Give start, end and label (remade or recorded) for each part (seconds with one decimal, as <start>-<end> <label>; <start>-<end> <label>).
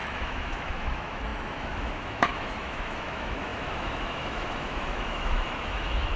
0.0-6.2 remade